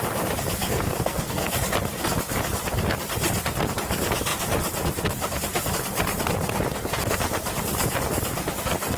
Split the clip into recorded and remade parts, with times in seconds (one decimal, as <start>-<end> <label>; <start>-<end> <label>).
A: 0.0-0.6 recorded; 0.6-1.5 remade; 1.5-9.0 recorded